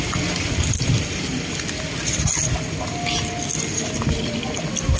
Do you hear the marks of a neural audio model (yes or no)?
no